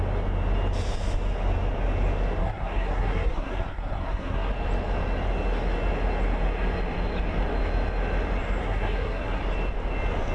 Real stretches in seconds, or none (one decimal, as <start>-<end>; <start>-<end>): 0.0-2.4; 4.5-8.6; 9.4-10.3